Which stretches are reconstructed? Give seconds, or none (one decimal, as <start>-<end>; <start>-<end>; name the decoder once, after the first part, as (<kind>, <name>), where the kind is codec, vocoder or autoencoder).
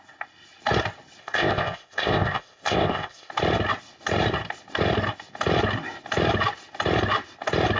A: 1.2-3.3 (codec, ZipCodec)